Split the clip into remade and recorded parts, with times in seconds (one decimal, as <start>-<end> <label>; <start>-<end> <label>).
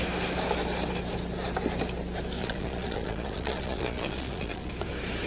0.0-2.4 recorded; 2.4-4.7 remade; 4.7-5.3 recorded